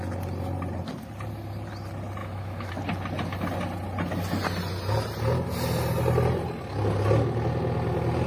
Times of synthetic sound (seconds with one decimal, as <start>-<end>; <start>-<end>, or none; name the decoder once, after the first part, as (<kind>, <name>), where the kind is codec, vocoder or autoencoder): 2.2-2.7 (autoencoder, DAC-VAE)